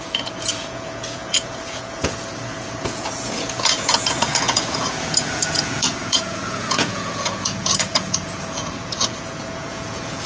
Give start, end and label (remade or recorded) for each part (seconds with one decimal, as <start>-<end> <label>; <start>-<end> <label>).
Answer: 0.0-10.3 remade